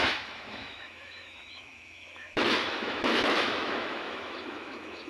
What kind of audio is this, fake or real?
fake